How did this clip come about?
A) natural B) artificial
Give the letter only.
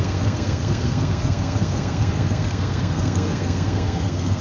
B